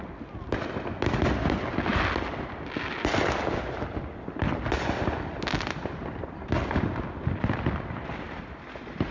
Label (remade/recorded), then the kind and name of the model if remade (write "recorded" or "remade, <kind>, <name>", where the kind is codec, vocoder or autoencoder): recorded